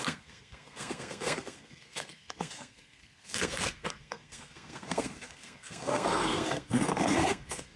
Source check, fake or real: fake